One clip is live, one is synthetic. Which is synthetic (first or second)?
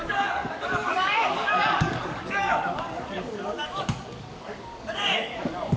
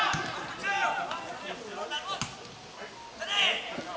first